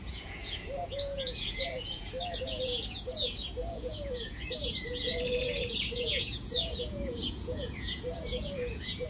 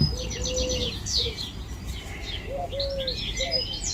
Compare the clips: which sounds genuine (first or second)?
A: second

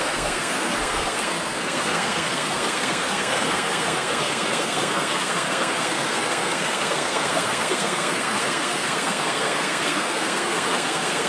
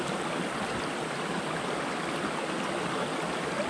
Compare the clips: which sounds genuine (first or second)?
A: second